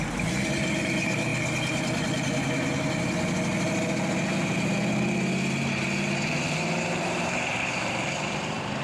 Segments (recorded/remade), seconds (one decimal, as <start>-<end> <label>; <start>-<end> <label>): 0.0-1.3 remade; 1.3-5.7 recorded; 5.7-8.8 remade